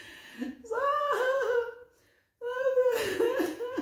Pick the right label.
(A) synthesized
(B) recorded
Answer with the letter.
A